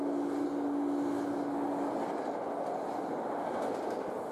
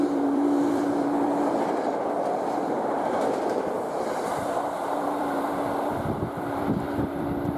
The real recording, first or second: first